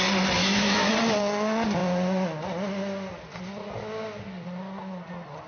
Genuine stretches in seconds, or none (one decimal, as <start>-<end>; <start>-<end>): 0.0-0.4; 0.9-5.5

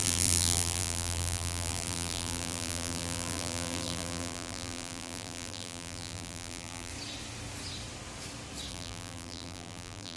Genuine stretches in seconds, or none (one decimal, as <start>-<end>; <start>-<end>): 6.9-8.7

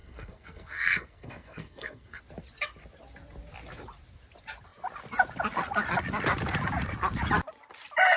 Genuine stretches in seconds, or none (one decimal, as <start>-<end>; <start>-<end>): 2.2-8.2

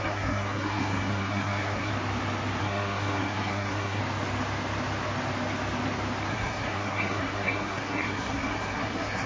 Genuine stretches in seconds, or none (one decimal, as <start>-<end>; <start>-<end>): 1.9-2.6; 4.0-6.3